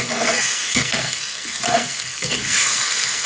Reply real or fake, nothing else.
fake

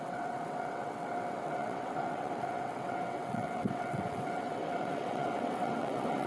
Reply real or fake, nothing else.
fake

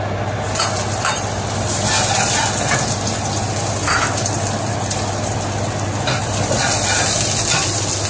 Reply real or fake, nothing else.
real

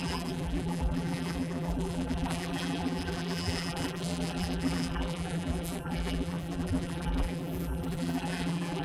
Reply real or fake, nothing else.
fake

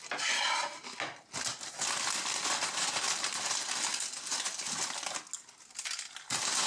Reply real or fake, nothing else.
real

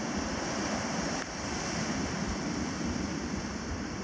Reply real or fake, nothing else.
real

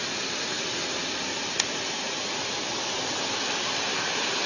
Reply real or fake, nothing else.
fake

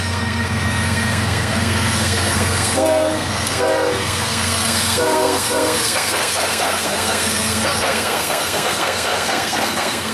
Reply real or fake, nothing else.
fake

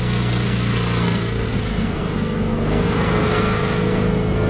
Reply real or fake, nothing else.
fake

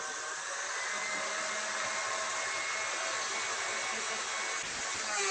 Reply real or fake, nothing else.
real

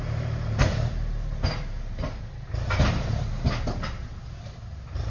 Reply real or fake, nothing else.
real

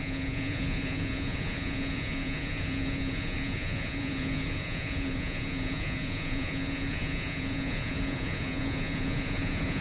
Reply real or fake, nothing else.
fake